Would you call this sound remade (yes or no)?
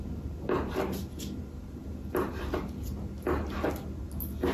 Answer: no